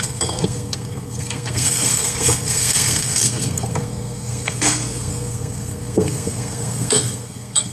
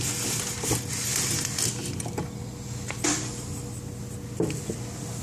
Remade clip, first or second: first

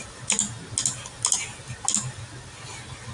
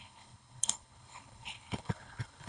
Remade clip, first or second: second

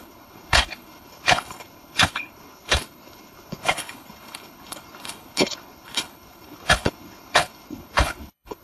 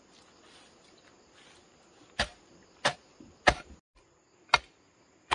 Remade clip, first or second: first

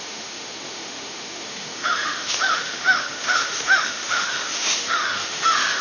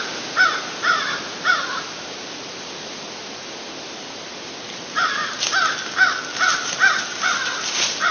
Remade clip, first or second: first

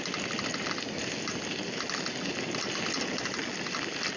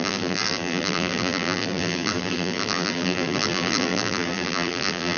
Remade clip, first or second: second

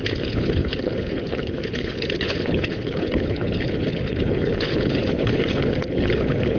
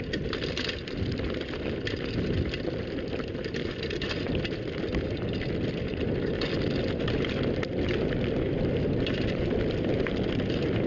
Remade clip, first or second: first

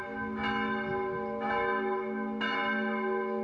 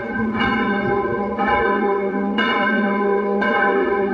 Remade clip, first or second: second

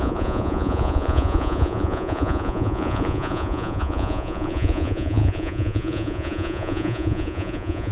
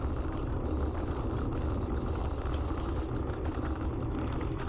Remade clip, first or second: first